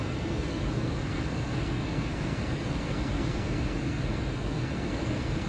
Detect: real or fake fake